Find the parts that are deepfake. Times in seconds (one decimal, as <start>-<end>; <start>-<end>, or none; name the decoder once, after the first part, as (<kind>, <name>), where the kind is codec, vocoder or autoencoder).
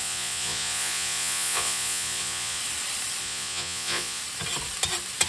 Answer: 0.0-2.6 (vocoder, Vocos); 3.2-4.2